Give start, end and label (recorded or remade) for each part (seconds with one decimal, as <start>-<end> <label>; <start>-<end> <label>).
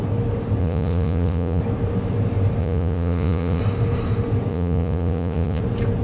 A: 0.0-0.6 recorded; 0.6-1.6 remade; 1.6-2.6 recorded; 2.6-3.6 remade; 3.6-4.5 recorded; 4.5-5.6 remade; 5.6-6.0 recorded